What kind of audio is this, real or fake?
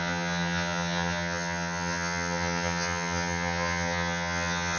fake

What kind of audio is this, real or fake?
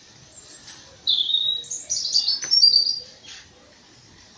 fake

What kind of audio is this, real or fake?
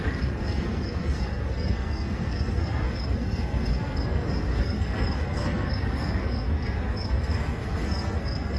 fake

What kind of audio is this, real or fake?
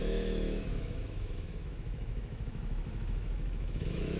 fake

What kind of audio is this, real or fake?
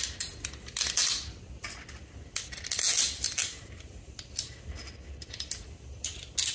real